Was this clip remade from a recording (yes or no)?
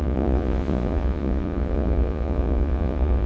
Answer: yes